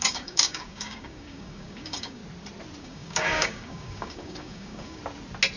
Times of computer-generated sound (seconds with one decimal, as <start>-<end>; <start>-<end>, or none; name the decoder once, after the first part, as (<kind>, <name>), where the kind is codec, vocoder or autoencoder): 0.0-2.2 (codec, DAC); 2.8-5.0